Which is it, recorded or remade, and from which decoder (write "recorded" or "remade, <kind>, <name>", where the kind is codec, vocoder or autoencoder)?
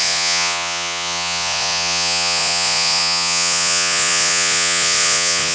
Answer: remade, vocoder, Vocos